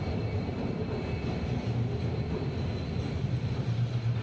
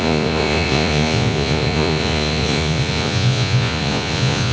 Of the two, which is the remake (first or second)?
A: second